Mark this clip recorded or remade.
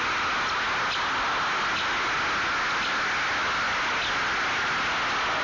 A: recorded